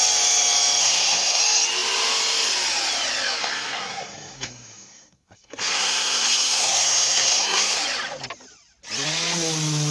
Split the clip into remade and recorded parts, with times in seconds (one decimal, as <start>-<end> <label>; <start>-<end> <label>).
0.0-0.8 recorded; 0.8-1.4 remade; 1.4-3.4 recorded; 3.4-7.8 remade; 7.8-9.9 recorded